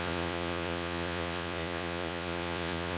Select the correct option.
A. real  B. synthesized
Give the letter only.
B